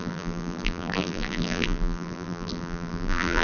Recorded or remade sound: remade